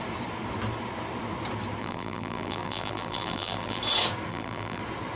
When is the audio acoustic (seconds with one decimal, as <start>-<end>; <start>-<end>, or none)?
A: 0.0-1.8; 3.8-4.3; 4.8-5.2